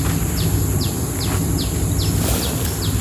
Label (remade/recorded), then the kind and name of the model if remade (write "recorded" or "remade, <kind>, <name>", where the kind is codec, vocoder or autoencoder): recorded